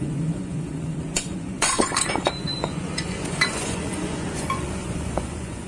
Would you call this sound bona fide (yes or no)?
no